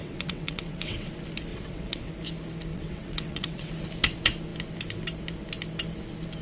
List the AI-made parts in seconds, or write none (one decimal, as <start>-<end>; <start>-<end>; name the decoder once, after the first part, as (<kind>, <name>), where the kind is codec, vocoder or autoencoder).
0.0-1.1 (vocoder, WaveNeXt); 1.5-2.1; 2.7-3.7